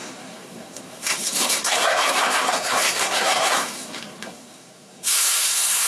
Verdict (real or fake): fake